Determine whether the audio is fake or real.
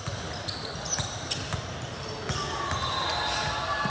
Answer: real